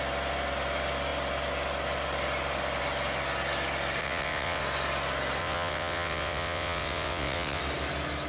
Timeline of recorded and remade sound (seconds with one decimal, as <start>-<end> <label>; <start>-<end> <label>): 0.0-4.0 recorded; 4.0-4.6 remade; 4.6-5.4 recorded; 5.4-7.6 remade; 7.6-8.3 recorded